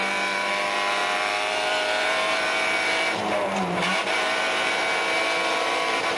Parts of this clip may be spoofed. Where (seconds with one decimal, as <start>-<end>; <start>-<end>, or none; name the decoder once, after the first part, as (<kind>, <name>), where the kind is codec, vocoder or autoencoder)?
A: 0.0-6.2 (vocoder, BigVGAN v2)